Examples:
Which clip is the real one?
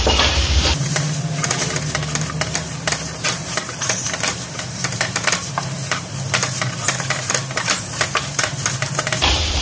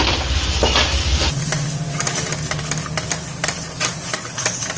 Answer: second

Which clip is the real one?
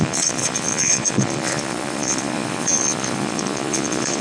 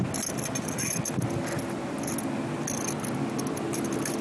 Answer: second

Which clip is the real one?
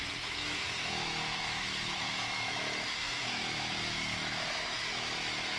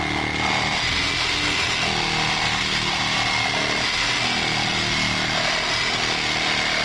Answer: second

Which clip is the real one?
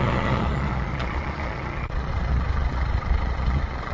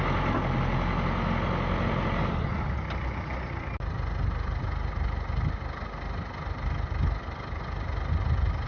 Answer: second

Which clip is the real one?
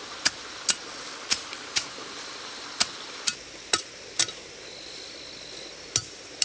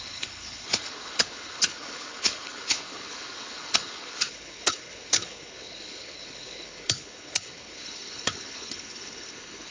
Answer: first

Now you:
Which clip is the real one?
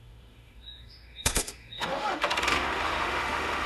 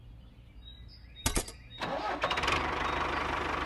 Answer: second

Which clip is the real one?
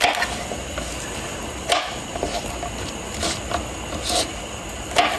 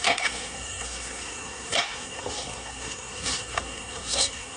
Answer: first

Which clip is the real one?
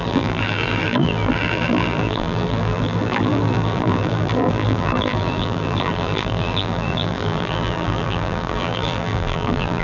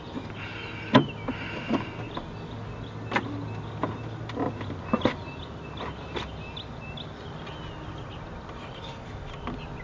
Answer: second